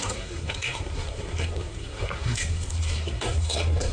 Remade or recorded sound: remade